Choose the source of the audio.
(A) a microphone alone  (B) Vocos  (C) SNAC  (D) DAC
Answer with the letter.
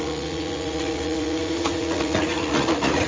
B